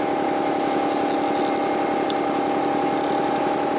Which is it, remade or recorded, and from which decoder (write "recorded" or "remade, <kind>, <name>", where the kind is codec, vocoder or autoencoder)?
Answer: recorded